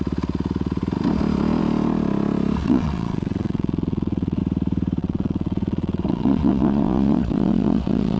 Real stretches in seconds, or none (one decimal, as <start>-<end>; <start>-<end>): 0.0-2.6; 4.4-5.0